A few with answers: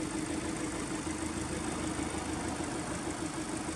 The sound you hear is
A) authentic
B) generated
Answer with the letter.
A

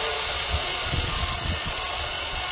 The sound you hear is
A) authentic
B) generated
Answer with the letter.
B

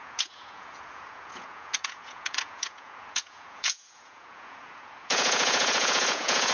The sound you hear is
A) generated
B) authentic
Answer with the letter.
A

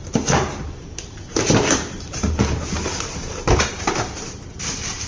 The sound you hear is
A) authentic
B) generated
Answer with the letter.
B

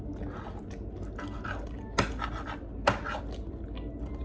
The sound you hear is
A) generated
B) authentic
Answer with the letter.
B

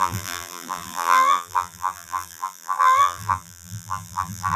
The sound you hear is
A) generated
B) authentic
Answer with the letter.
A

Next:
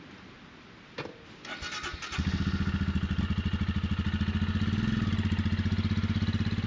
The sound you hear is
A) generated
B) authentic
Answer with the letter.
B